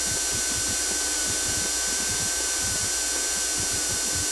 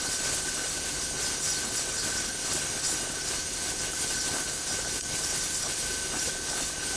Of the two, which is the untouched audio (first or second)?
first